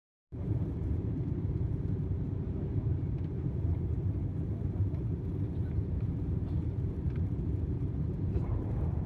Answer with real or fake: fake